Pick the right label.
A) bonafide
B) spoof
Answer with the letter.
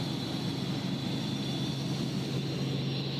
A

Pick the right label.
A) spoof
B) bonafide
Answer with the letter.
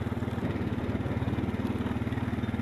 B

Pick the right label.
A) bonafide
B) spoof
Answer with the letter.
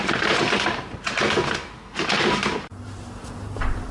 B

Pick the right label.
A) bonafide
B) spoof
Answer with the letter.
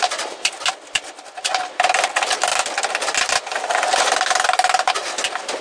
A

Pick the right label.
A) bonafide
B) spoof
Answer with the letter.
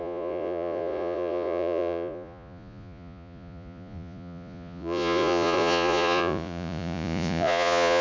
B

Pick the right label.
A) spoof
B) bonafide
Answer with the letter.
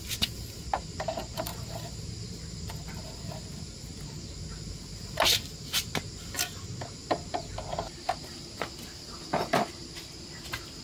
B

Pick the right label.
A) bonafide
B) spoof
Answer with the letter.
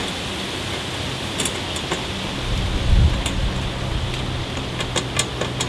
A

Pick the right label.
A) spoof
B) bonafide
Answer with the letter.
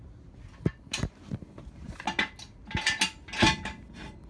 B